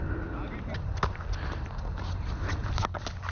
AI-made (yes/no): no